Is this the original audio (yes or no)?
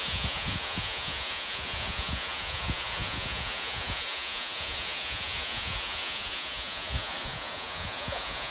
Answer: no